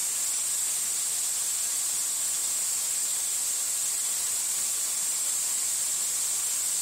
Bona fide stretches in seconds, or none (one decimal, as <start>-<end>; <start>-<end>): 0.0-6.8